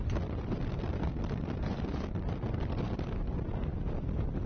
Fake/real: real